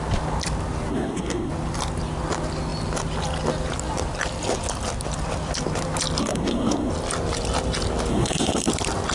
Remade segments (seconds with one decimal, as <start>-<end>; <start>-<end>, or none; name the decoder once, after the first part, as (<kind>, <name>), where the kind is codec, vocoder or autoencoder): 0.9-1.5 (codec, SNAC); 6.2-6.9; 8.1-8.7